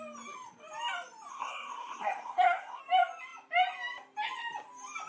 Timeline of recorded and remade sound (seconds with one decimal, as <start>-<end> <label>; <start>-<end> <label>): 0.0-1.3 recorded; 1.3-2.8 remade; 2.8-5.1 recorded